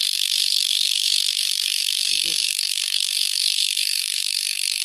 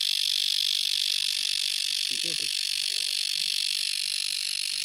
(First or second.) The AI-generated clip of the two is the first